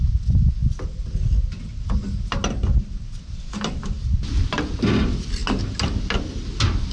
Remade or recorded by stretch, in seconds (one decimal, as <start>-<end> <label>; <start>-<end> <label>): 0.0-6.9 recorded